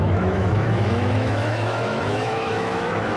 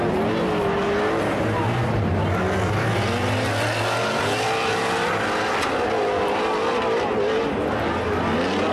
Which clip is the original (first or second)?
second